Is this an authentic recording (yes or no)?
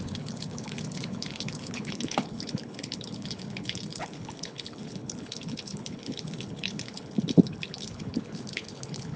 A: no